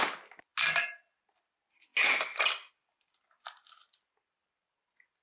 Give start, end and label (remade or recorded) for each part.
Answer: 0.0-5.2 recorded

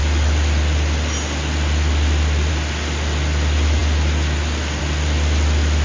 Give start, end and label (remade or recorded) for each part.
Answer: 0.0-5.8 recorded